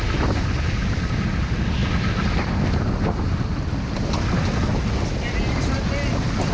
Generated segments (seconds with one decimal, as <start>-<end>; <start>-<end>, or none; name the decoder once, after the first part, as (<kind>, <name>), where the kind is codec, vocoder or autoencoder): none